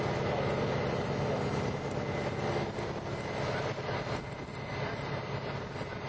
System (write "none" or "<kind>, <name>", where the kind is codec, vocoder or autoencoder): none